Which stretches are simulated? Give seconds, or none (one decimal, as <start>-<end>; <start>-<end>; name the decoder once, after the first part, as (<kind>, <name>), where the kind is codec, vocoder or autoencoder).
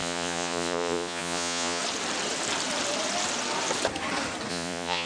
0.0-1.8 (vocoder, Vocos); 4.5-5.1